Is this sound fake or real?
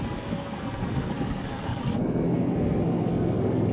fake